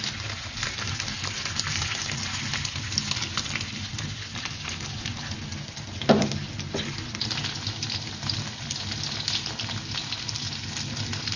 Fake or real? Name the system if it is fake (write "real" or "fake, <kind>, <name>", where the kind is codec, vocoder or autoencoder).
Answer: real